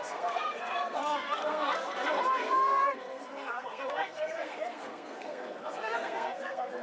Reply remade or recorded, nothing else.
remade